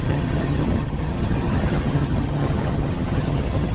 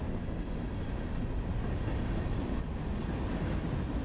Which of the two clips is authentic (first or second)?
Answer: second